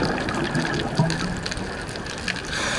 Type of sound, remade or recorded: recorded